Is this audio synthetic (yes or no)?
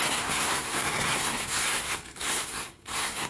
yes